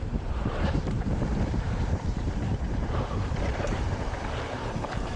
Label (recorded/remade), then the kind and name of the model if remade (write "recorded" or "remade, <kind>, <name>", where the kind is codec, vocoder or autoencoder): remade, vocoder, BigVGAN v2